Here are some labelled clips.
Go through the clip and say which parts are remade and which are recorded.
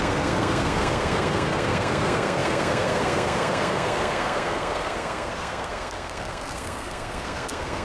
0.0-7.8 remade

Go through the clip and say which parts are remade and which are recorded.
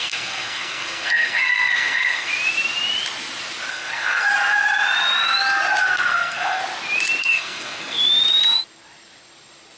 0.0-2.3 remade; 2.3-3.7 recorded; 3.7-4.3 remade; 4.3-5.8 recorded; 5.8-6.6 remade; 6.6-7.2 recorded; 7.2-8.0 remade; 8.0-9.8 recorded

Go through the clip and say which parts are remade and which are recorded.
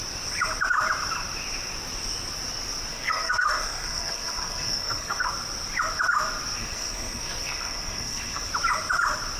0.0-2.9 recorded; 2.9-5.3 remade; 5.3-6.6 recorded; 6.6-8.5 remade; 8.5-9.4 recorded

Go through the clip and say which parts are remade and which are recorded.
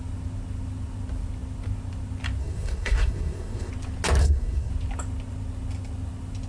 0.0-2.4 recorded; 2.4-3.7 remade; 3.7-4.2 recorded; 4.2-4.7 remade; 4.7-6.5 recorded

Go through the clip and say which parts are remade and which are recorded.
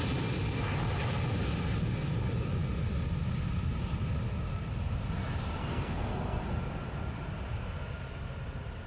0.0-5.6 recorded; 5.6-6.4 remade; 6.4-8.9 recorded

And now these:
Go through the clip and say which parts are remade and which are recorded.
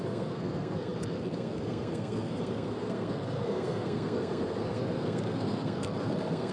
0.0-6.5 remade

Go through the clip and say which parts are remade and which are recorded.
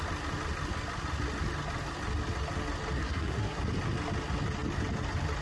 0.0-3.0 recorded; 3.0-3.6 remade; 3.6-5.4 recorded